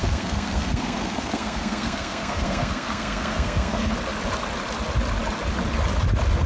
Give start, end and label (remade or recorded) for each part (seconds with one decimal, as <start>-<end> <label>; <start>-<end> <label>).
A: 0.0-3.9 remade; 3.9-6.5 recorded

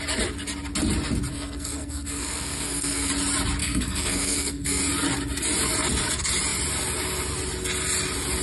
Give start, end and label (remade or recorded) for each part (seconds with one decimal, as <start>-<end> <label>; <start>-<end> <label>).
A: 0.0-1.3 recorded; 1.3-3.1 remade; 3.1-3.6 recorded; 3.6-4.8 remade; 4.8-8.4 recorded

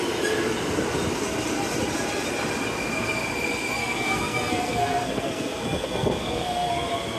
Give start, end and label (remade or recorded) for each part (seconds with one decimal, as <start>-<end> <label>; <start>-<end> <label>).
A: 0.0-3.8 recorded; 3.8-6.7 remade; 6.7-7.2 recorded

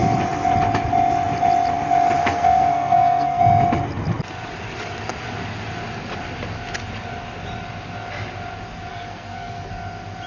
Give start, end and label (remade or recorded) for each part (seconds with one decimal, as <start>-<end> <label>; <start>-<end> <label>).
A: 0.0-2.2 recorded; 2.2-3.4 remade; 3.4-8.9 recorded; 8.9-9.7 remade; 9.7-10.3 recorded

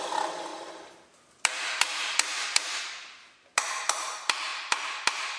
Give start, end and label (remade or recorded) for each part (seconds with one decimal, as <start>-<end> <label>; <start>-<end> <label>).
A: 0.0-5.4 recorded

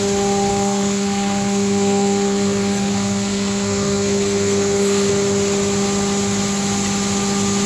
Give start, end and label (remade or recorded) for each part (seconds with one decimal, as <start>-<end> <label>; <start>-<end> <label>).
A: 0.0-0.5 recorded; 0.5-5.1 remade; 5.1-7.7 recorded

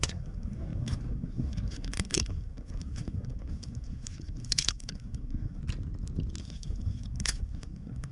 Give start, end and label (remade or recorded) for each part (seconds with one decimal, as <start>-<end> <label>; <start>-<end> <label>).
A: 0.0-5.6 remade; 5.6-6.4 recorded; 6.4-8.1 remade

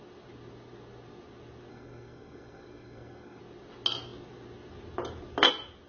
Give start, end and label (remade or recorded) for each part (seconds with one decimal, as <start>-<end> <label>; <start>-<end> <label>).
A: 0.0-1.7 recorded; 1.7-3.4 remade; 3.4-5.9 recorded